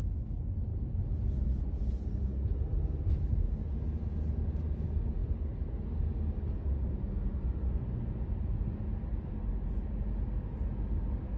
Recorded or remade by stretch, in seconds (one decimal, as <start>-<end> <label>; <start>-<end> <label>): 0.0-5.2 recorded; 5.2-5.7 remade; 5.7-11.4 recorded